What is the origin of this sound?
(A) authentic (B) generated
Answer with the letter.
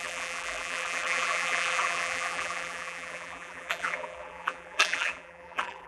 B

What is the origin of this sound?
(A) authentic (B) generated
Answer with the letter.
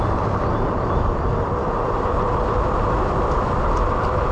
B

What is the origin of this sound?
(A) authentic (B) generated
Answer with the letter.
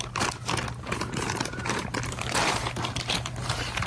B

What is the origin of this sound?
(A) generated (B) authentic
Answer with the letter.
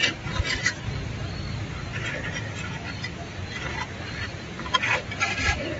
B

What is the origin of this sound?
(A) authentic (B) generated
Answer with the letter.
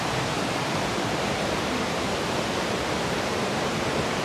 B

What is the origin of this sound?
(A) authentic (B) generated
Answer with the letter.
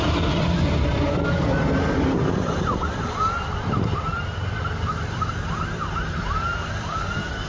B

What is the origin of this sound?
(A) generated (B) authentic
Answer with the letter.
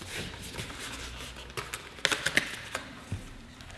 B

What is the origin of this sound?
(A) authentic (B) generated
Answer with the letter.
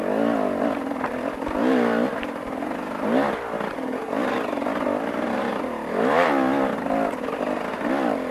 A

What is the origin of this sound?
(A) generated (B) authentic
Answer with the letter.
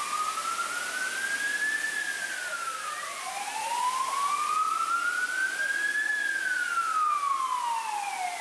B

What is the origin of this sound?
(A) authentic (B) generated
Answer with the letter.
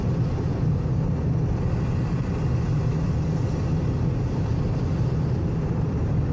A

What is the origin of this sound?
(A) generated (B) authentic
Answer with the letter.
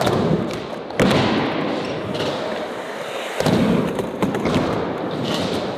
B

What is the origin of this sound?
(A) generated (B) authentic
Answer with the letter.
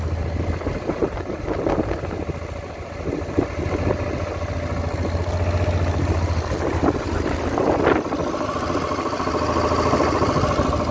B